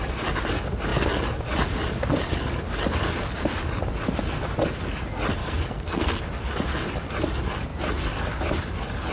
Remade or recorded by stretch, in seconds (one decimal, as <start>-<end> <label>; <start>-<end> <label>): 0.0-5.4 recorded; 5.4-6.2 remade; 6.2-9.1 recorded